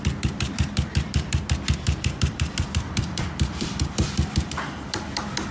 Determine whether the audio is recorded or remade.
remade